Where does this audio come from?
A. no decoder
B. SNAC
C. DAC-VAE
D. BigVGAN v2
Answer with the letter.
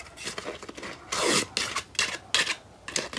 A